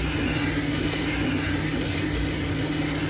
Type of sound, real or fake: real